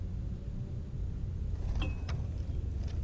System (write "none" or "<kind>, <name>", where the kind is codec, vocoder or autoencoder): none